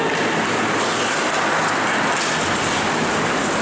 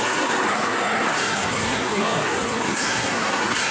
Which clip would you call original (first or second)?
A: first